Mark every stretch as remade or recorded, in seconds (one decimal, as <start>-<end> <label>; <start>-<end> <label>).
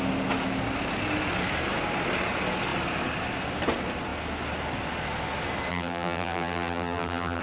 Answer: 0.0-5.7 recorded; 5.7-7.4 remade